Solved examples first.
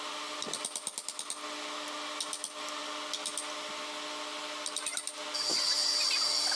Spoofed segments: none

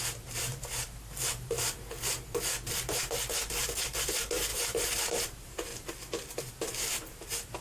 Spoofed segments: 0.0-5.7 (vocoder, BigVGAN v2); 6.4-7.6

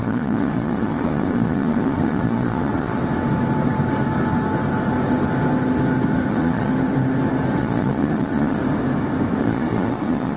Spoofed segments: 0.0-3.0 (vocoder, Vocos); 6.3-6.7; 7.6-8.6; 9.4-10.4

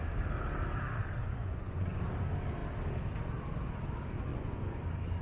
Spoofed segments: 1.2-2.0 (vocoder, Vocos); 4.3-4.8

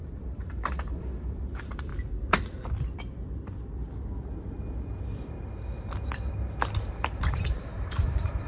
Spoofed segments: 0.0-1.9 (vocoder, BigVGAN v2); 6.9-8.5

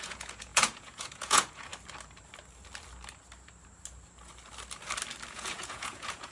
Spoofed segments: 0.0-1.7 (vocoder, Vocos); 5.3-6.3